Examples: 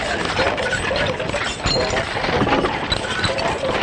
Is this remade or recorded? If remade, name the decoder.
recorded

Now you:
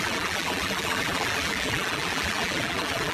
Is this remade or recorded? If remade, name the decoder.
remade, vocoder, BigVGAN v2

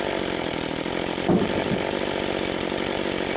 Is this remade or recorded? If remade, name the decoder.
recorded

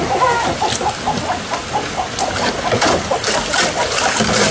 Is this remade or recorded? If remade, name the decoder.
recorded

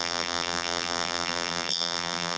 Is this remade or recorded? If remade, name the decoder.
remade, vocoder, BigVGAN v2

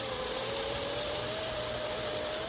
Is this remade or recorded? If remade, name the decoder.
recorded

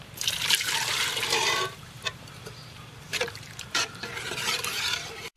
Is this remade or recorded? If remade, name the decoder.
remade, vocoder, BigVGAN v2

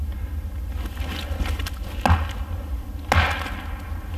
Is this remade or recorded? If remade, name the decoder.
recorded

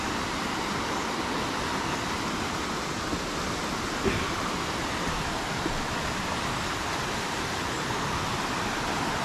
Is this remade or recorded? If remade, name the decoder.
recorded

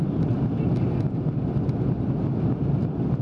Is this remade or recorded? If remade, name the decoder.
recorded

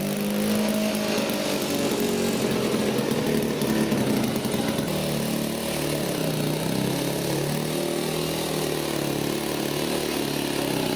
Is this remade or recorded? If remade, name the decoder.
recorded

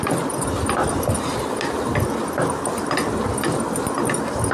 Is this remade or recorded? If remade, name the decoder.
recorded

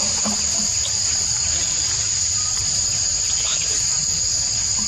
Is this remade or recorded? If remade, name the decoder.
recorded